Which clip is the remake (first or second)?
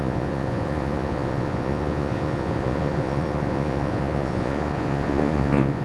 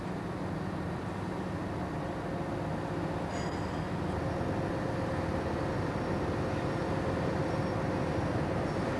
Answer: first